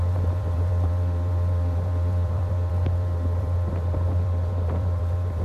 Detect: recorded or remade remade